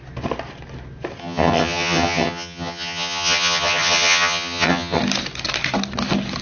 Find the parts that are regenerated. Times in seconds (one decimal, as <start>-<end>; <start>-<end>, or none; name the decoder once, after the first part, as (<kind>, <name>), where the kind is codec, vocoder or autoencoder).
1.2-5.0 (vocoder, HiFi-GAN)